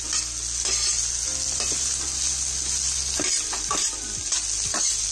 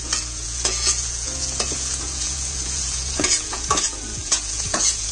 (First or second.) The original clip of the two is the first